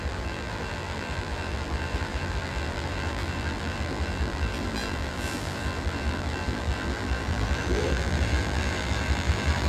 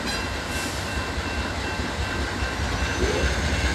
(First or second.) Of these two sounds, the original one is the second